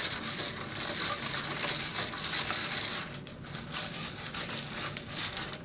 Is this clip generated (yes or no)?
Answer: no